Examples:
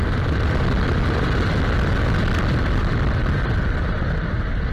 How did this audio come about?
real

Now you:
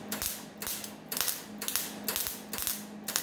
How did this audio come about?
real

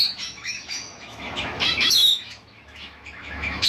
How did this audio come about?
fake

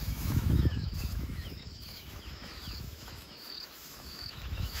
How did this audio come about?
fake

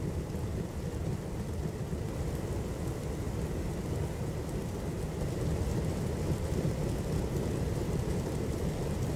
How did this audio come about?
real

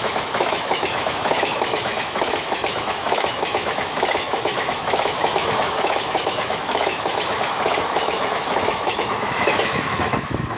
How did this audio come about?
fake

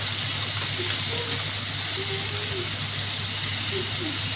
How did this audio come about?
real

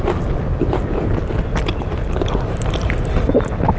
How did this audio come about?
real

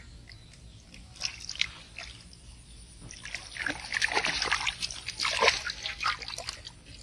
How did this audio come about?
real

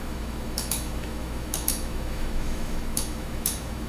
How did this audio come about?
fake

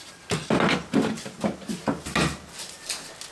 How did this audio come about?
real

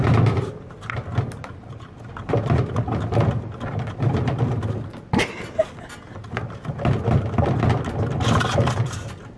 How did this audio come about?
real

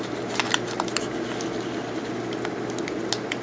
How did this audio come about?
real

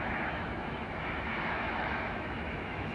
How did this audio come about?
fake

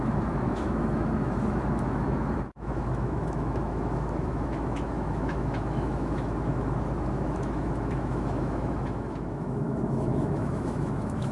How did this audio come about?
fake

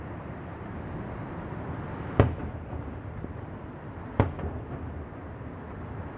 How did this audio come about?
real